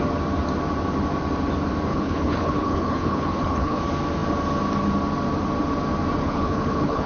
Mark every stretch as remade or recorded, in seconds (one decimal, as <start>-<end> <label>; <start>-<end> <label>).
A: 0.0-1.9 recorded; 1.9-3.8 remade; 3.8-6.2 recorded; 6.2-7.1 remade